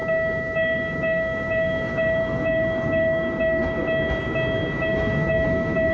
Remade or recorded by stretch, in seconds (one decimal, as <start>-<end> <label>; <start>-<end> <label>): 0.0-3.8 remade; 3.8-4.8 recorded; 4.8-5.9 remade